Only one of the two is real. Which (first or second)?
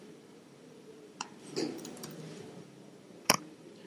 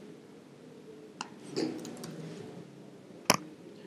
second